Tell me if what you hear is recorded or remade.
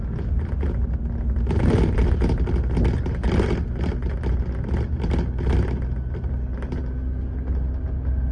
recorded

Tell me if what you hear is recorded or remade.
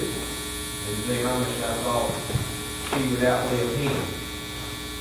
recorded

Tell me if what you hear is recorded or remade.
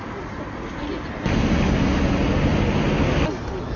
recorded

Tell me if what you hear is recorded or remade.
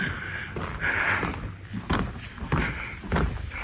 recorded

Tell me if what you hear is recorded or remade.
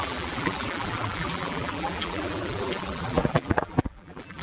remade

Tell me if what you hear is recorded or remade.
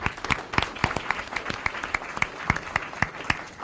recorded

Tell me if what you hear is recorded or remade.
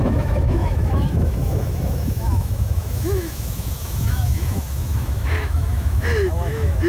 remade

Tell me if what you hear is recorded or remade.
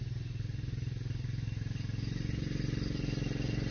recorded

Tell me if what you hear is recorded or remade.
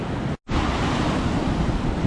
recorded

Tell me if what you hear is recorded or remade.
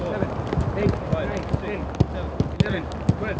recorded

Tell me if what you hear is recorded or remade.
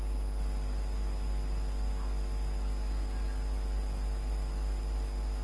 recorded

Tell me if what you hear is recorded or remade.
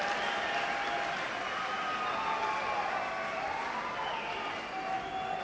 recorded